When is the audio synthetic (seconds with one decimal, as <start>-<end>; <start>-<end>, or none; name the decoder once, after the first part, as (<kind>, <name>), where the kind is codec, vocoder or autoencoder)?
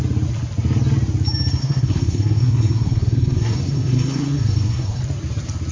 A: 1.6-5.0 (codec, SNAC)